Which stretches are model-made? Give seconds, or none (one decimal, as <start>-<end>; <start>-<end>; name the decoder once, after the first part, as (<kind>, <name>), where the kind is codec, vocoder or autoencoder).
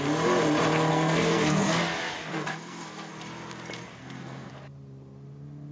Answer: 0.9-1.6 (codec, SNAC); 2.3-3.1; 4.0-4.5